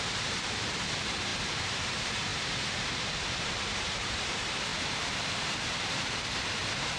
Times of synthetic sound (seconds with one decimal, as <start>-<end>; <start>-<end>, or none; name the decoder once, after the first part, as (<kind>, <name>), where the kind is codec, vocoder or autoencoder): 0.0-7.0 (vocoder, BigVGAN v2)